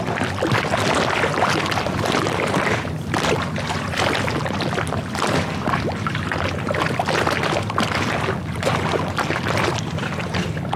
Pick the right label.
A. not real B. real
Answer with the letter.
B